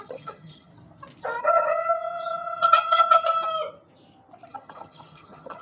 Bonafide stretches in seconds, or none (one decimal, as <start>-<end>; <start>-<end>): 0.7-1.4; 3.3-4.5